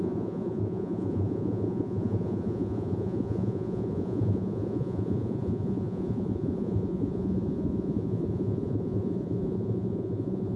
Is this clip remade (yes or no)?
yes